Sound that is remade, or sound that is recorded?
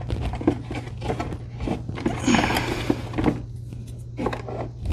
recorded